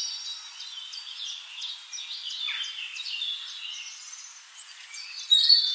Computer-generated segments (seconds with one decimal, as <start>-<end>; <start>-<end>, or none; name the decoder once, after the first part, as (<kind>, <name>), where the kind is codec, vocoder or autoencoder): none